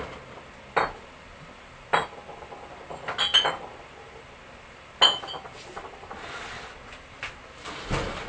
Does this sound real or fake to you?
real